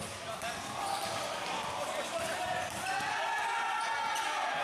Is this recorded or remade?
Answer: recorded